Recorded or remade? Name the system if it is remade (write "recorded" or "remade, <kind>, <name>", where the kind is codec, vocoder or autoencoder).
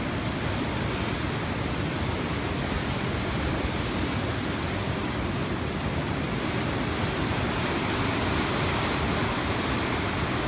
recorded